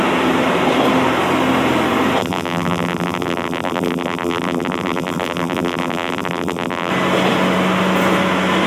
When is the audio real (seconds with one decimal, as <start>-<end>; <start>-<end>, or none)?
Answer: 0.0-2.2; 6.9-8.7